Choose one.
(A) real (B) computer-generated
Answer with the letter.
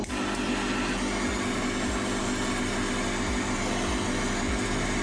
A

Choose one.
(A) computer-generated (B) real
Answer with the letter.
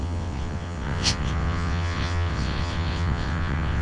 A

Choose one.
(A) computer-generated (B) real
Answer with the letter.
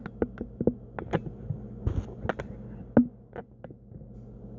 B